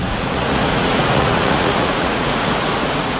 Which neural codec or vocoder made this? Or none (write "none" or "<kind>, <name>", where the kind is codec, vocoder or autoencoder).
vocoder, Vocos